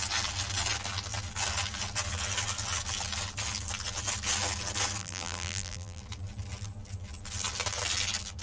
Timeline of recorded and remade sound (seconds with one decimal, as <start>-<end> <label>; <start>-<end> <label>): 0.0-5.0 recorded; 5.0-6.0 remade; 6.0-8.4 recorded